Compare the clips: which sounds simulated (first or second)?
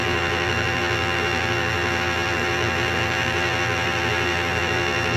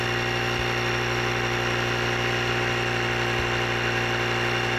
first